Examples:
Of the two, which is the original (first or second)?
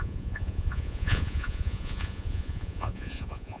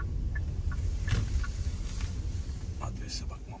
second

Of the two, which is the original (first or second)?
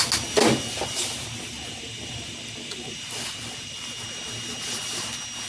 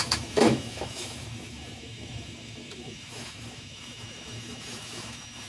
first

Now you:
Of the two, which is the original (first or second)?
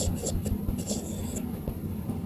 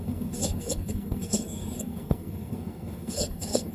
first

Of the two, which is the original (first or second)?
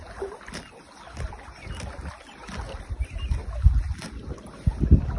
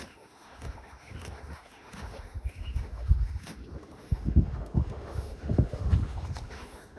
first